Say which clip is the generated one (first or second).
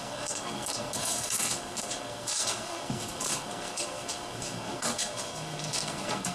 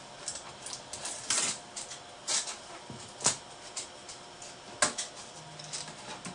first